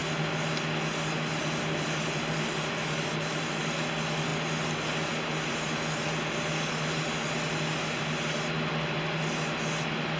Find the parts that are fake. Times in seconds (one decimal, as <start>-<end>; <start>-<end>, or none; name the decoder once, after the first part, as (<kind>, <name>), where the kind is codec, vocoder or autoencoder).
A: none